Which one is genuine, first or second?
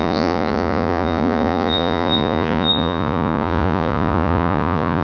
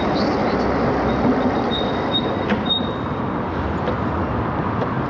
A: second